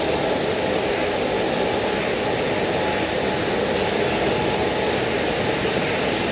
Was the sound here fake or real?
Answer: real